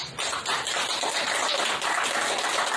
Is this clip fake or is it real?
real